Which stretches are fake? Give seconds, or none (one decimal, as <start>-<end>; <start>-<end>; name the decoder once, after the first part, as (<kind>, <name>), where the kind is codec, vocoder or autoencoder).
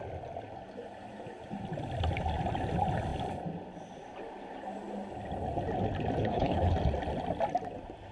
6.2-6.7 (codec, HILCodec)